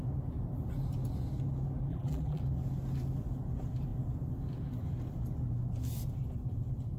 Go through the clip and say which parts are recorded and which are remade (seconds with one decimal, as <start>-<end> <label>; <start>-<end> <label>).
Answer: 0.0-1.9 recorded; 1.9-2.4 remade; 2.4-7.0 recorded